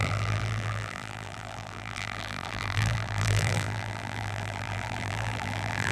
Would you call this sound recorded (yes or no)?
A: no